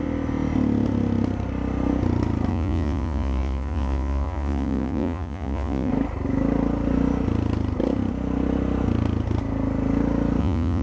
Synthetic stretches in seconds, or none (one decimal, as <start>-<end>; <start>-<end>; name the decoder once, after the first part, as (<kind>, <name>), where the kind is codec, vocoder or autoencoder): 2.5-5.9 (vocoder, Vocos); 10.4-10.8